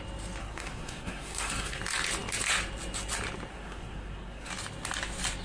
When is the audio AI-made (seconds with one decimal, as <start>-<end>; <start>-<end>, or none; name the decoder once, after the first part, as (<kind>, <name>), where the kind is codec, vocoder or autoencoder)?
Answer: 0.4-1.8 (codec, SNAC); 3.5-4.5